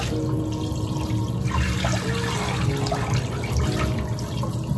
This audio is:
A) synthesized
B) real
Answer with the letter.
B